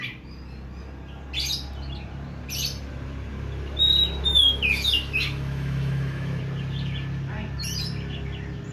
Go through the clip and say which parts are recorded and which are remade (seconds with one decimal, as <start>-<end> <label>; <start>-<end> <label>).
0.0-4.3 recorded; 4.3-6.4 remade; 6.4-8.7 recorded